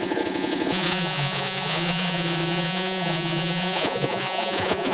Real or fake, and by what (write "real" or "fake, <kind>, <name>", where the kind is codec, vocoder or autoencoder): fake, vocoder, Vocos